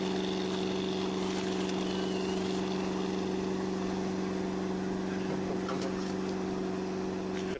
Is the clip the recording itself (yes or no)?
yes